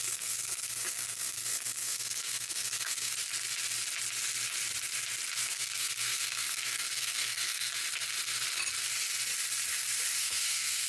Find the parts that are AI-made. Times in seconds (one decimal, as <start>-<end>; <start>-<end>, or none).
0.0-3.1; 5.4-7.7; 10.2-10.9